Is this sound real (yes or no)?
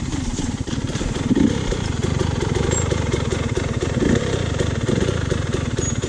no